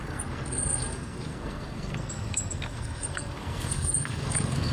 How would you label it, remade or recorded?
remade